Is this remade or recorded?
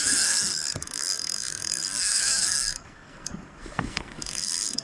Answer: remade